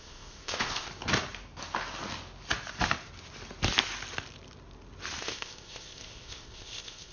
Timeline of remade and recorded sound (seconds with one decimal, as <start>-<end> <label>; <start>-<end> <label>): 0.0-0.9 remade; 0.9-5.2 recorded; 5.2-7.1 remade